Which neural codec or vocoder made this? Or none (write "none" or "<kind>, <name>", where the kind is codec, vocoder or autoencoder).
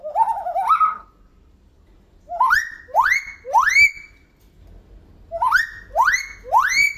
none